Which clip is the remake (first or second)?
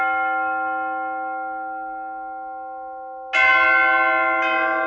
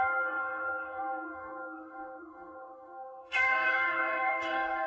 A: second